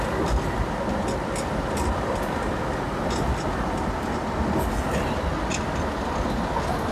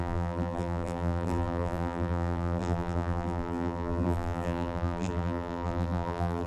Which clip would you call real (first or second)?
first